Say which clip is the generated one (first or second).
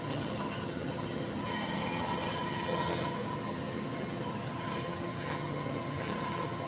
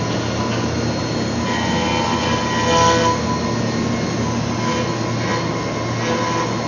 first